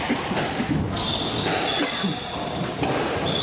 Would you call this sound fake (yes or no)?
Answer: no